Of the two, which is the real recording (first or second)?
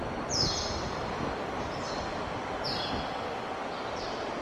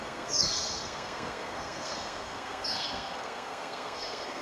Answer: first